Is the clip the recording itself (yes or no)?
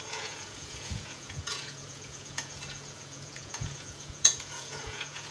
no